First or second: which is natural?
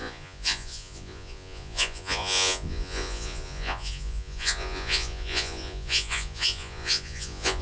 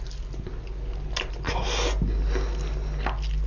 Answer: second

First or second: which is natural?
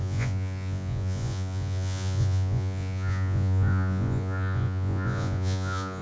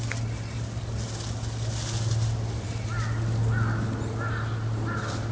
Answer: second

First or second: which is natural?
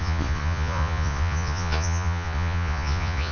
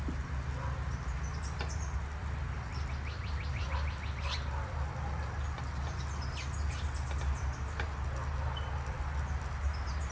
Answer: second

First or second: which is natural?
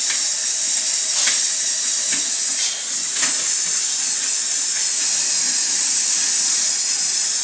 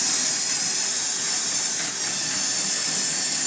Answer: second